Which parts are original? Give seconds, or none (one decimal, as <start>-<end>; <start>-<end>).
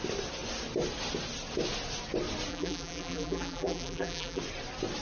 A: 0.0-2.5; 4.4-5.0